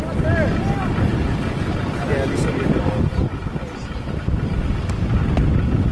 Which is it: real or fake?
real